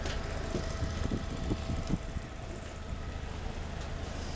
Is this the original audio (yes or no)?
yes